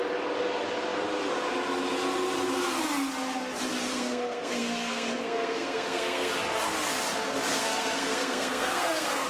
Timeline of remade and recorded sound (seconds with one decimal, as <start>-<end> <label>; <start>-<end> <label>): 0.0-3.9 recorded; 3.9-6.3 remade; 6.3-7.5 recorded; 7.5-9.3 remade